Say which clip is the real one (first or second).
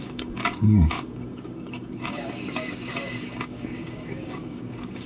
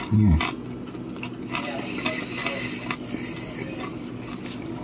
second